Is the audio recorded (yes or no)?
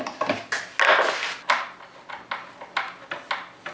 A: yes